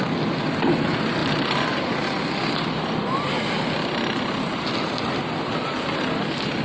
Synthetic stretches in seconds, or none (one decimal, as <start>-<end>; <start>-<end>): none